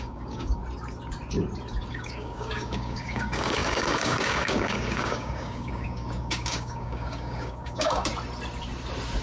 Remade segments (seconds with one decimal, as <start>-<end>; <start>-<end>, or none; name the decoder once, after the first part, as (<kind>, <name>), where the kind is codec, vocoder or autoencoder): 0.0-0.6 (codec, DAC); 1.9-8.1